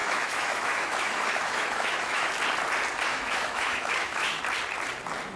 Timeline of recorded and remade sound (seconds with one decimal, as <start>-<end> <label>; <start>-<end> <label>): 0.0-2.3 remade; 2.3-3.1 recorded; 3.1-4.4 remade; 4.4-5.4 recorded